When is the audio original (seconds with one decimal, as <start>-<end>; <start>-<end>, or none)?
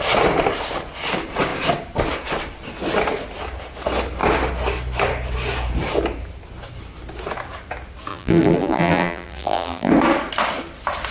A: 0.0-8.1; 9.9-11.1